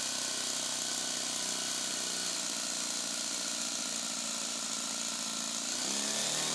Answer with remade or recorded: recorded